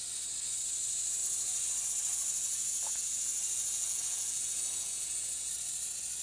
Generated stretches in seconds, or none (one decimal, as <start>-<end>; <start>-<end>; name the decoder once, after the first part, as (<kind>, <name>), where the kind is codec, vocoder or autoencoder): 2.5-5.5 (vocoder, Vocos)